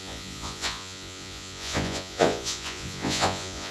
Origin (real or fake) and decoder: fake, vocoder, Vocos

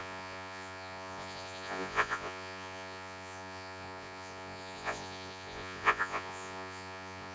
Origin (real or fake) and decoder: fake, vocoder, Vocos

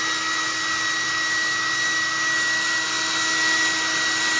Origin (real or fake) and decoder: real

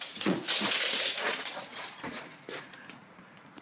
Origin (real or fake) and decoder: fake, vocoder, Vocos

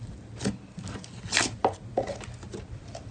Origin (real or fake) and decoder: real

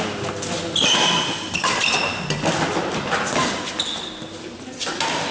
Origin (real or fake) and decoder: real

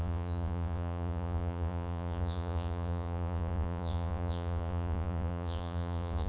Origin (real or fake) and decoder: fake, vocoder, Vocos